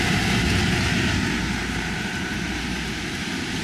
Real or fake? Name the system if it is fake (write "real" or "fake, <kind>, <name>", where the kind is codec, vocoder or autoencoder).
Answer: fake, vocoder, BigVGAN v2